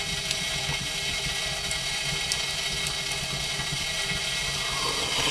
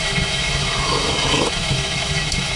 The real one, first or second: first